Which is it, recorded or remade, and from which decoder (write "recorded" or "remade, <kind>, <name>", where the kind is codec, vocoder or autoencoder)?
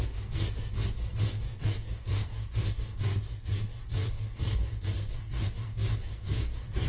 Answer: remade, codec, SNAC